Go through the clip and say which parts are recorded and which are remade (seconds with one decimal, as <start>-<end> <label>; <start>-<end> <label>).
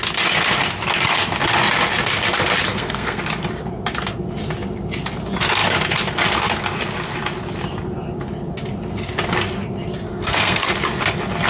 0.0-2.7 recorded; 2.7-3.2 remade; 3.2-10.1 recorded; 10.1-10.7 remade; 10.7-11.5 recorded